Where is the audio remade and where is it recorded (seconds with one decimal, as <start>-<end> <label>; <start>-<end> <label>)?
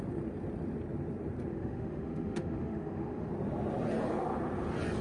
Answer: 0.0-1.5 recorded; 1.5-3.3 remade; 3.3-5.0 recorded